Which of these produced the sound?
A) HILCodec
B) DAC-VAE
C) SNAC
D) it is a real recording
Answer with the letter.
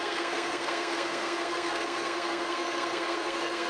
C